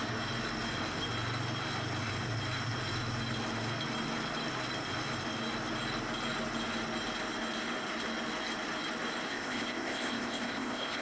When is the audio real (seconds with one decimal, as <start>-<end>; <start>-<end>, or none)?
0.0-9.3